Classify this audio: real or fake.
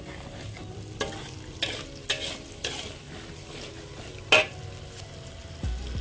real